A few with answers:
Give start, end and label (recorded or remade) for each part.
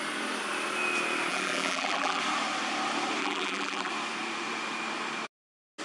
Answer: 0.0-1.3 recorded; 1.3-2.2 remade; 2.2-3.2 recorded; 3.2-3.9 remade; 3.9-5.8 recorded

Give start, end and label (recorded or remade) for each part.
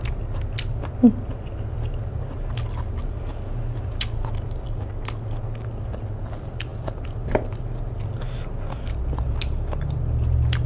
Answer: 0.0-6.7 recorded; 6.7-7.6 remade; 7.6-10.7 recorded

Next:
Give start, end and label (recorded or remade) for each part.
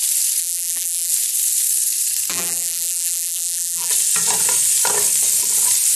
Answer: 0.0-0.4 recorded; 0.4-1.1 remade; 1.1-2.3 recorded; 2.3-3.9 remade; 3.9-6.0 recorded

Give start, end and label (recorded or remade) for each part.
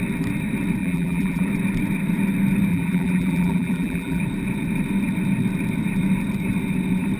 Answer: 0.0-0.8 recorded; 0.8-1.5 remade; 1.5-2.7 recorded; 2.7-4.2 remade; 4.2-7.2 recorded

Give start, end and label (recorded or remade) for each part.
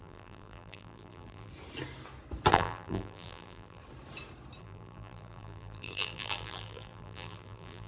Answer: 0.0-1.5 remade; 1.5-2.5 recorded; 2.5-3.8 remade; 3.8-4.6 recorded; 4.6-7.9 remade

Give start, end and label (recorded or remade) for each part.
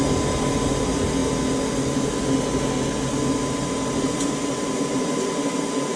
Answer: 0.0-1.2 remade; 1.2-3.9 recorded; 3.9-6.0 remade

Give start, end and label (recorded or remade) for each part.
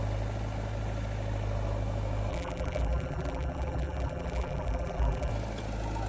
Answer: 0.0-2.3 recorded; 2.3-5.3 remade; 5.3-6.1 recorded